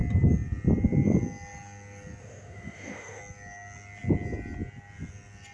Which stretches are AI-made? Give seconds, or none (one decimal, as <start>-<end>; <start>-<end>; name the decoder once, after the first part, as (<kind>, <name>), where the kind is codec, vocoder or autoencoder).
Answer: 2.2-3.2 (autoencoder, DAC-VAE)